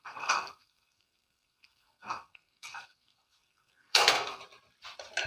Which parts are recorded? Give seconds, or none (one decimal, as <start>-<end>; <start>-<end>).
4.4-5.3